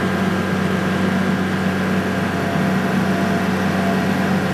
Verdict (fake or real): real